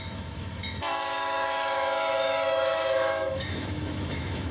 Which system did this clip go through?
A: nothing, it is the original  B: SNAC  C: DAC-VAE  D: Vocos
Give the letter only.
C